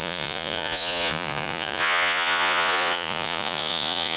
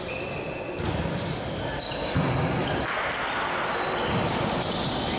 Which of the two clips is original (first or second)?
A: second